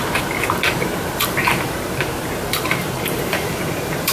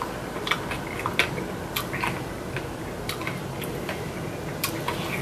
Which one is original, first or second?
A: second